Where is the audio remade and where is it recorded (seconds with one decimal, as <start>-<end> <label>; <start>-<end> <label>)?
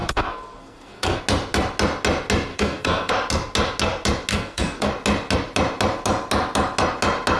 0.0-1.2 remade; 1.2-2.5 recorded; 2.5-3.1 remade; 3.1-4.3 recorded; 4.3-4.9 remade; 4.9-7.4 recorded